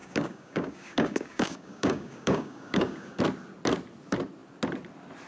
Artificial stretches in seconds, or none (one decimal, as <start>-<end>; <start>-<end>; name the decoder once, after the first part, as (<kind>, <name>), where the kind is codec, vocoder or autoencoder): 0.0-3.2 (codec, DAC)